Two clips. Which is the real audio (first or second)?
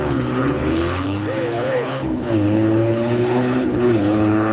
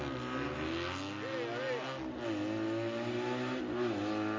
second